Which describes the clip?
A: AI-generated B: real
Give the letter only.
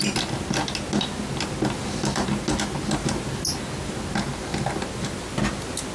B